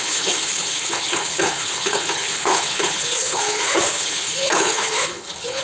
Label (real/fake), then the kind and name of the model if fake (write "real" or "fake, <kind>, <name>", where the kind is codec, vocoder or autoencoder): fake, codec, HILCodec